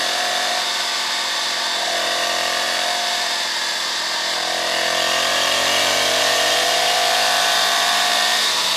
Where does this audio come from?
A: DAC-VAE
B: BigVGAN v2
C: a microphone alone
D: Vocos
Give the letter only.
B